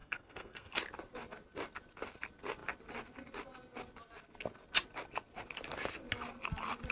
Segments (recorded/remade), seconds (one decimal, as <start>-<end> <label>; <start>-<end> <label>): 0.0-0.7 remade; 0.7-6.9 recorded